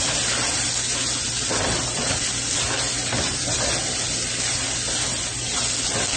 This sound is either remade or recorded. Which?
recorded